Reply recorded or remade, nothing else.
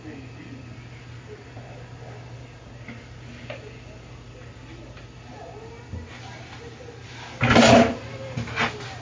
recorded